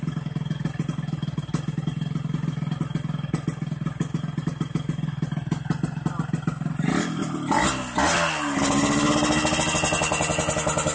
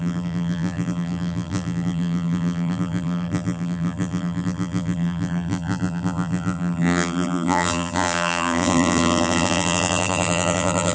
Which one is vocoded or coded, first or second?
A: second